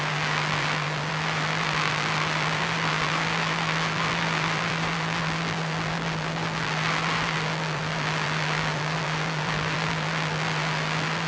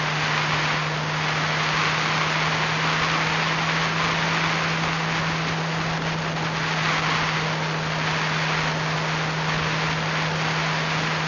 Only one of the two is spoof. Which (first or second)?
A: first